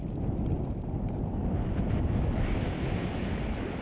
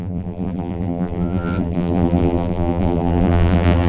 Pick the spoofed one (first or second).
second